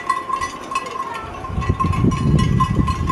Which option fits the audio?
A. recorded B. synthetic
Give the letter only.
A